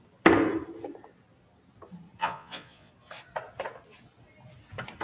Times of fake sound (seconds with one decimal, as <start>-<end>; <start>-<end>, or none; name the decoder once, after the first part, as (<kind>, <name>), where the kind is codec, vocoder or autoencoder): 2.2-2.9 (vocoder, Vocos)